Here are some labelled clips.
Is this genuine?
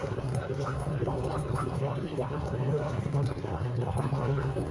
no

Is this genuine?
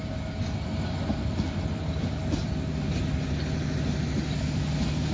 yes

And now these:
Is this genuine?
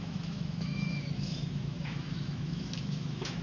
no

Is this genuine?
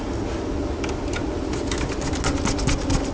yes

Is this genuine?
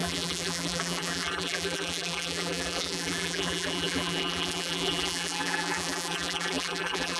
no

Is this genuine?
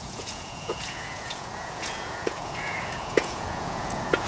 no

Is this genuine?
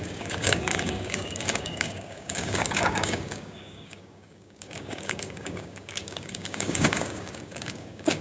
no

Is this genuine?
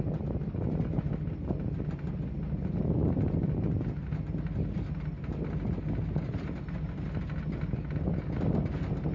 yes